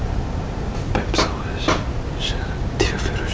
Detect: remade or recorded recorded